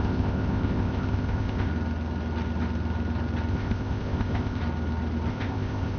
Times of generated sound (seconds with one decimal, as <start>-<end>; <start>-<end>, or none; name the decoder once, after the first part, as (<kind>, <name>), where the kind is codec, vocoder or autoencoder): 0.0-1.7 (codec, ZipCodec); 3.5-4.6; 5.3-6.0